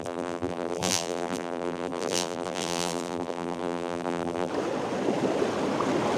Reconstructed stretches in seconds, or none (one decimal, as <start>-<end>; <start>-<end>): 0.0-4.5